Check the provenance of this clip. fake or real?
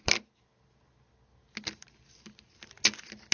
real